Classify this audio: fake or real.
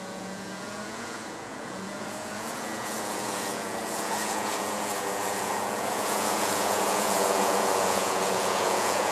fake